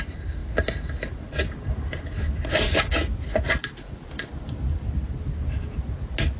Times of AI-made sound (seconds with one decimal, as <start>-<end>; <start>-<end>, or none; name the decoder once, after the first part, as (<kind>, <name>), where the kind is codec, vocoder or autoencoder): none

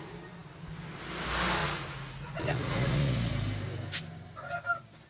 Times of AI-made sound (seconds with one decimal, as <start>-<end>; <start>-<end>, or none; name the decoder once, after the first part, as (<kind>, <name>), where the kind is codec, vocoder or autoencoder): 1.6-3.3 (vocoder, Vocos)

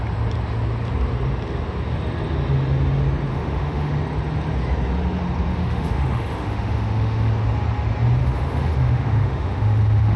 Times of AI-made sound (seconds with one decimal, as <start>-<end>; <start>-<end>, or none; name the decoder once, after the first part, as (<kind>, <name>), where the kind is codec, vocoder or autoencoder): 3.3-3.9 (autoencoder, DAC-VAE); 5.5-7.3; 8.2-10.2

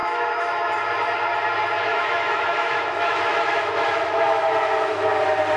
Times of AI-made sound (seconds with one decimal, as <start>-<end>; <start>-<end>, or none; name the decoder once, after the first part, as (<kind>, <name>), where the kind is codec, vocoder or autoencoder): 0.0-0.6 (autoencoder, DAC-VAE); 1.9-5.1

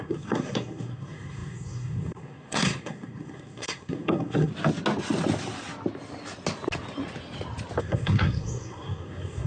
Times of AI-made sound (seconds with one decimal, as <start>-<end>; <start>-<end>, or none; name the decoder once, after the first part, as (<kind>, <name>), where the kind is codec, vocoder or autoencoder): 0.0-4.5 (codec, SNAC); 7.8-9.5

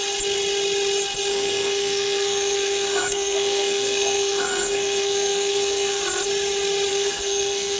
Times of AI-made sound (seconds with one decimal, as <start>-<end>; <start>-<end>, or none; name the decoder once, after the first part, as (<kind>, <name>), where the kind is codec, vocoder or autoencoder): 1.3-6.0 (codec, SNAC); 6.9-7.8